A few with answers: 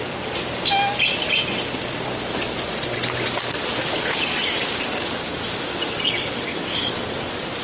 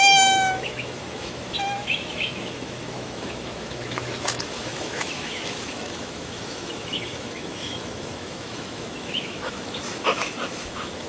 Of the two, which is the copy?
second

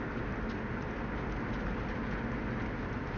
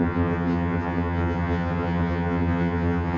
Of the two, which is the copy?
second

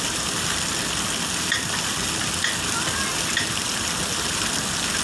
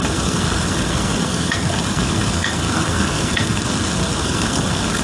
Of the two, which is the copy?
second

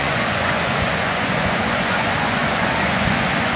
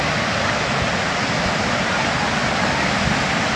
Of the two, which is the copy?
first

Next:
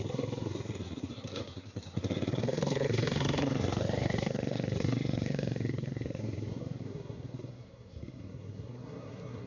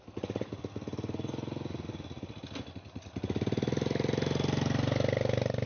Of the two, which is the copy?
first